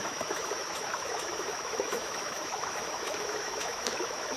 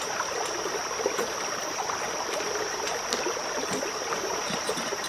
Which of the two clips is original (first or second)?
second